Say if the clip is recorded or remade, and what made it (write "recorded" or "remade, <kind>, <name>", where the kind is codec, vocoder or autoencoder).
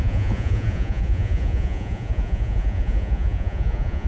remade, vocoder, Vocos